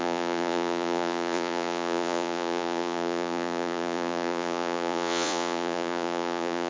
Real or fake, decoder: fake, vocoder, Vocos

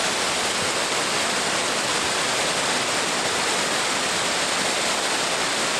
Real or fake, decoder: real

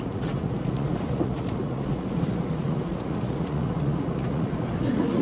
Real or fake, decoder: fake, vocoder, Vocos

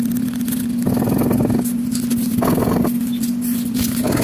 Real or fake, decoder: real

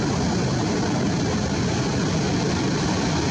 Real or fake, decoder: real